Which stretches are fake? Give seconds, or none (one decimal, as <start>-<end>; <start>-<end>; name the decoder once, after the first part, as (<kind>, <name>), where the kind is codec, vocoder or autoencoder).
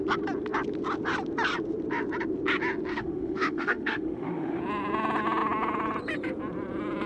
2.9-4.6 (autoencoder, DAC-VAE)